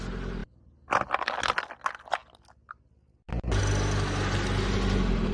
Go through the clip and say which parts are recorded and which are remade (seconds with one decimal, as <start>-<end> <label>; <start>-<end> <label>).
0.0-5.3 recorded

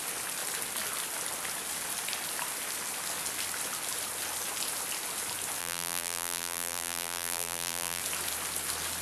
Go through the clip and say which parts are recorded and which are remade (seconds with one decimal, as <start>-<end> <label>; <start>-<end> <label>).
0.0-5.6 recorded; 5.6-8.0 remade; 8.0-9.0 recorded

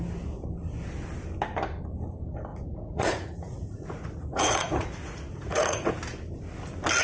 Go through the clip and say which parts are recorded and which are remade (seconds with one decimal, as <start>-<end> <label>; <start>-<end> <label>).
0.0-2.5 recorded; 2.5-5.9 remade; 5.9-7.0 recorded